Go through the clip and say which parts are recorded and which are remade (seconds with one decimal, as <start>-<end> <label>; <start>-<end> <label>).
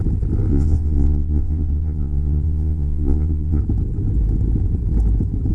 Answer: 0.0-0.5 recorded; 0.5-3.6 remade; 3.6-5.5 recorded